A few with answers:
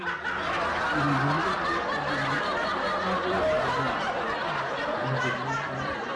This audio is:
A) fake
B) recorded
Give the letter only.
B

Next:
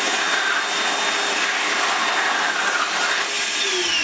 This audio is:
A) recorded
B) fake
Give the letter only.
A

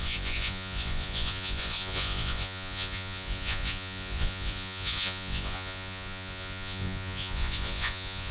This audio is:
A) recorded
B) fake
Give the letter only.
B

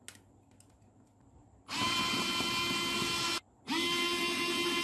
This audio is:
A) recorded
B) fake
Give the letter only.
A